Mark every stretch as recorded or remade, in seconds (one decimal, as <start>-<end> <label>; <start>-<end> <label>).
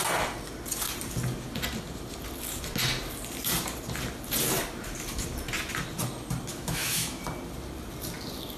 0.0-6.5 recorded; 6.5-7.2 remade; 7.2-8.6 recorded